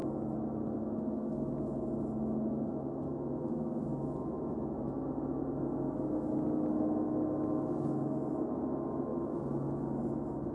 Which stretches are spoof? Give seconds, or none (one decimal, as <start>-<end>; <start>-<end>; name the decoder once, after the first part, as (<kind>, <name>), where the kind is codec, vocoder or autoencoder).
none